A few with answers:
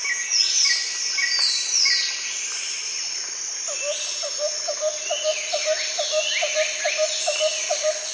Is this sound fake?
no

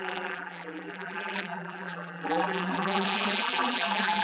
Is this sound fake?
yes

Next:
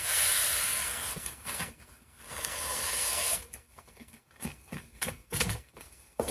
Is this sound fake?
yes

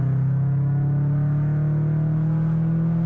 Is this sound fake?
no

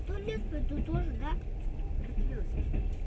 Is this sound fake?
no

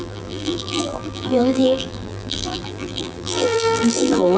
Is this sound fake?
yes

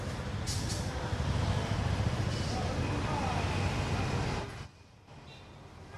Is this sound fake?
no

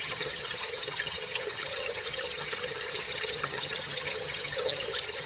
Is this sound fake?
yes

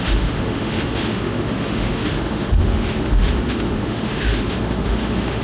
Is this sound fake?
yes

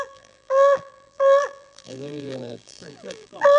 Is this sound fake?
yes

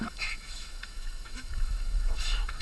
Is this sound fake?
yes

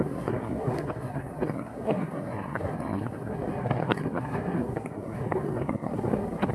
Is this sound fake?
yes